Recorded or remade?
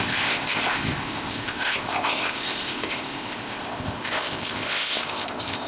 remade